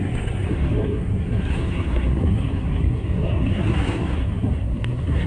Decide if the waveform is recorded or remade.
remade